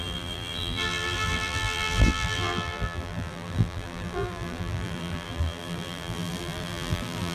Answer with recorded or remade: remade